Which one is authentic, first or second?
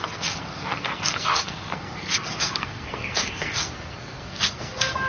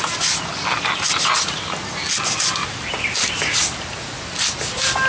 second